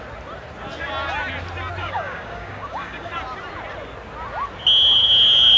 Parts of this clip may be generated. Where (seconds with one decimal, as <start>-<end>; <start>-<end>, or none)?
1.8-3.1